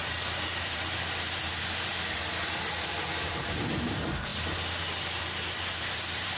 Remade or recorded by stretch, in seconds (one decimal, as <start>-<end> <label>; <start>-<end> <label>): 0.0-1.9 remade; 1.9-3.4 recorded; 3.4-4.3 remade; 4.3-5.7 recorded; 5.7-6.4 remade